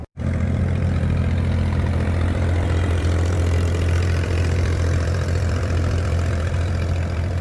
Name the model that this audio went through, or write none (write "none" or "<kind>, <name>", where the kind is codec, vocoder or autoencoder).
vocoder, BigVGAN v2